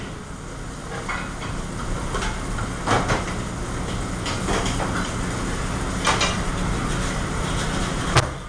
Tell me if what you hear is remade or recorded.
recorded